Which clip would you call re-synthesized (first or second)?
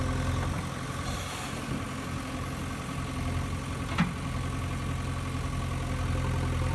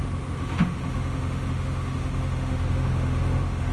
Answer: second